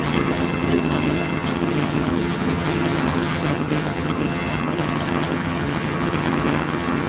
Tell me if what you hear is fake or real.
fake